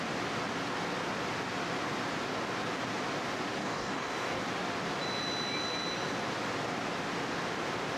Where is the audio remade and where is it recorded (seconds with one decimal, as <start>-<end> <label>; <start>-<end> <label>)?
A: 0.0-3.6 recorded; 3.6-4.4 remade; 4.4-8.0 recorded